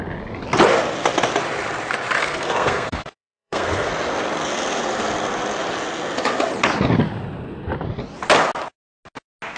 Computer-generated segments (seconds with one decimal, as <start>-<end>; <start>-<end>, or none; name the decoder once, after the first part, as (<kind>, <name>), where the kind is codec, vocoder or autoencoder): 2.2-3.9 (codec, SNAC)

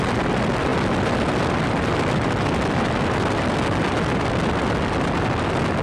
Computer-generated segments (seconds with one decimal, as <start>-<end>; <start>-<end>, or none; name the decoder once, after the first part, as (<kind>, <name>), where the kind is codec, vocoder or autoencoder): none

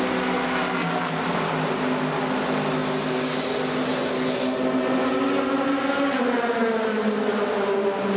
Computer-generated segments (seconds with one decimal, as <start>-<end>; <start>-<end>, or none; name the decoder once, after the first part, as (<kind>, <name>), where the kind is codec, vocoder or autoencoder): none

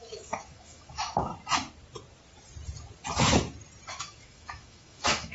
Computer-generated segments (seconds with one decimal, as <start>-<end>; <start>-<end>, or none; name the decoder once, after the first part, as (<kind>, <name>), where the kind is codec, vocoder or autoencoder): 0.0-1.3 (autoencoder, DAC-VAE); 3.9-5.3